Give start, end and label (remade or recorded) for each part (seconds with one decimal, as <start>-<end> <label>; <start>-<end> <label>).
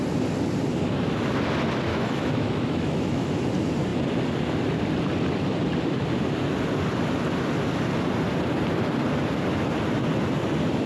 0.0-1.9 recorded; 1.9-3.4 remade; 3.4-10.9 recorded